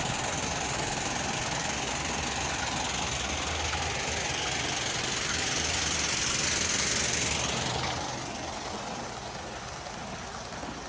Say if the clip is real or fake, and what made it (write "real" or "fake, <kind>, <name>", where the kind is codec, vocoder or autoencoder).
real